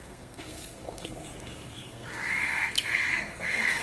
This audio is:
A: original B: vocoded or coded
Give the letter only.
B